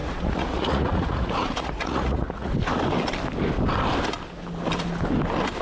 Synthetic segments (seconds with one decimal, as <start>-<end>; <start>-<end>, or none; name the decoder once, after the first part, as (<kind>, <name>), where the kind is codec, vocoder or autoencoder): 0.0-2.5 (vocoder, Vocos)